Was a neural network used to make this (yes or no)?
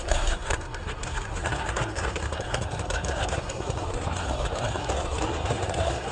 yes